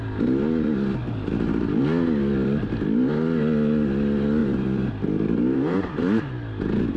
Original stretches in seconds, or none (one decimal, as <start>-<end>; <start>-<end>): 0.0-4.4; 6.2-7.0